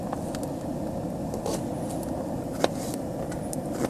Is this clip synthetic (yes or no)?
no